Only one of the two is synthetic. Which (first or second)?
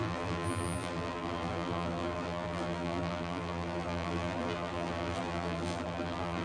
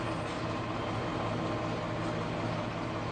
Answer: first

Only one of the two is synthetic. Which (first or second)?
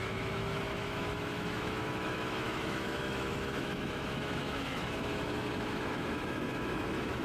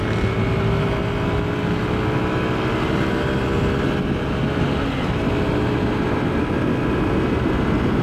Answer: first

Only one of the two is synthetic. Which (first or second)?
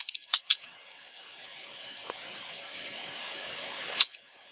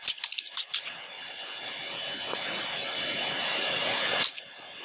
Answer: first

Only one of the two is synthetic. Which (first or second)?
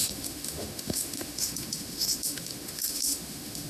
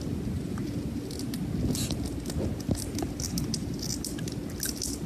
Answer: first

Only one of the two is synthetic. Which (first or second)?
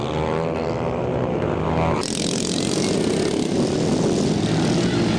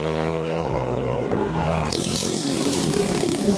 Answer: second